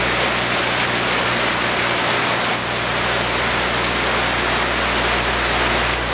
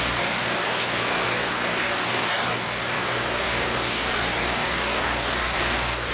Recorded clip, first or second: first